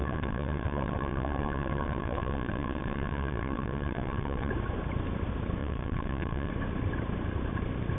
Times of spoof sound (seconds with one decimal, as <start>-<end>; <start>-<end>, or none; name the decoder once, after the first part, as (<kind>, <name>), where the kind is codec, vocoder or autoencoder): 0.0-4.5 (vocoder, WaveNeXt); 5.6-6.5